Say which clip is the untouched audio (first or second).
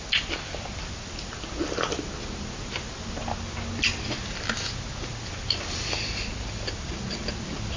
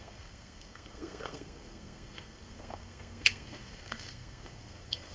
first